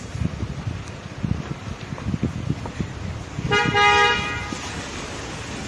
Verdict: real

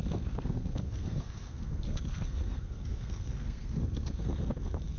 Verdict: fake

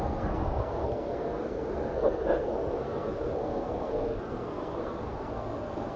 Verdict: fake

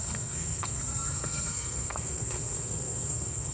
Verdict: fake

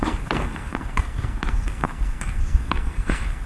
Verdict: fake